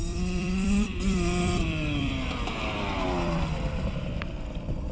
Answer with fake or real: fake